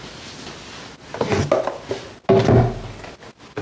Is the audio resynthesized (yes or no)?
no